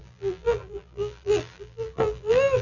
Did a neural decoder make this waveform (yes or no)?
yes